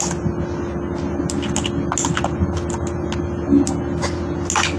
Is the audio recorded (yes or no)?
yes